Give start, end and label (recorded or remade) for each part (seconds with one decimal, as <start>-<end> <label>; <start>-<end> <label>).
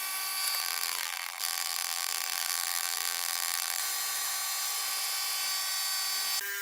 0.0-0.6 recorded; 0.6-3.8 remade; 3.8-6.6 recorded